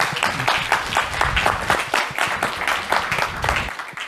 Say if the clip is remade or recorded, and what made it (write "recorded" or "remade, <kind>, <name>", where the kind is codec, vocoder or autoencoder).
recorded